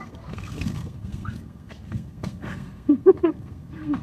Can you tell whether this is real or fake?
fake